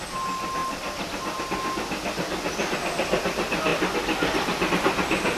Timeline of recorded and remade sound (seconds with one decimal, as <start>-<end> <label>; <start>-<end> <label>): 0.0-5.4 recorded